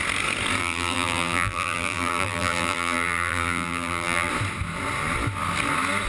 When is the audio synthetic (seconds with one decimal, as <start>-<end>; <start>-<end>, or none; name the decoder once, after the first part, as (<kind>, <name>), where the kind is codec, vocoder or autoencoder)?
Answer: 0.6-4.3 (vocoder, BigVGAN v2)